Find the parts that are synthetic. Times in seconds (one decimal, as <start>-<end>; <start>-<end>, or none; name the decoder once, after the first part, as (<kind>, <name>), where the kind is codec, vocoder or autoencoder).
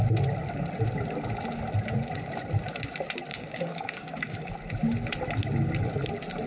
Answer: 3.3-4.5 (codec, DAC)